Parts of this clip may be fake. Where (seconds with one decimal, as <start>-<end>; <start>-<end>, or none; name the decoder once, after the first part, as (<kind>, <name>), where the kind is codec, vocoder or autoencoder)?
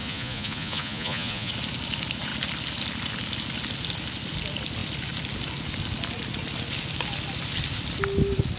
0.0-1.5 (vocoder, Vocos)